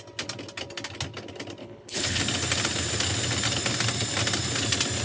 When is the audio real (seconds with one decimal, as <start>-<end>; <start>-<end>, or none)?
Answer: 0.0-1.6; 2.2-5.0